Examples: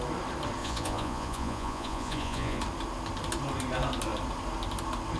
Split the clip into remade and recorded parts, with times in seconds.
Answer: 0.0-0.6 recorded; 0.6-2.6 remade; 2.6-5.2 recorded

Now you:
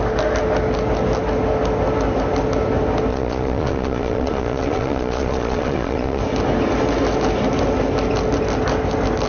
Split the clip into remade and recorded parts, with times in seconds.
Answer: 0.0-3.1 recorded; 3.1-6.2 remade; 6.2-9.3 recorded